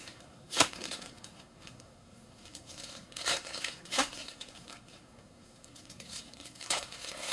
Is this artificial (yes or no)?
yes